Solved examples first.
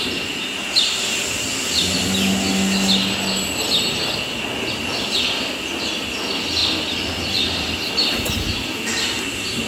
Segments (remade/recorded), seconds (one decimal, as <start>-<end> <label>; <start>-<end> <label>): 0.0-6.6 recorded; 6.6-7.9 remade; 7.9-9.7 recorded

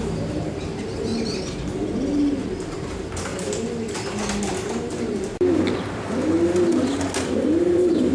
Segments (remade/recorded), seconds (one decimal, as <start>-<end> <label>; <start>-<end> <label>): 0.0-1.1 remade; 1.1-2.7 recorded; 2.7-3.3 remade; 3.3-7.6 recorded; 7.6-8.1 remade

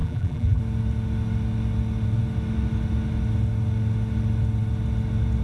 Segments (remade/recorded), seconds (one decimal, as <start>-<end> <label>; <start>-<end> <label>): 0.0-0.6 remade; 0.6-5.4 recorded